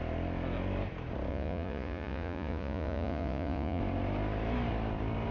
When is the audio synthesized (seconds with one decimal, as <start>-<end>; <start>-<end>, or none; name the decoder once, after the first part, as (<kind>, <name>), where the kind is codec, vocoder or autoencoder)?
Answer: 1.3-3.8 (vocoder, Vocos)